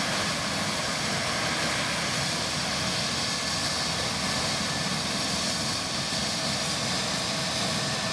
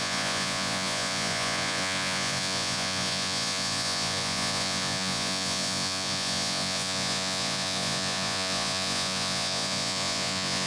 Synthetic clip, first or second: second